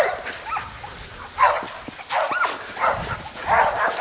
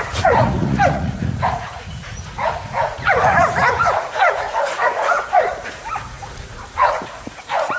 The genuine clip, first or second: first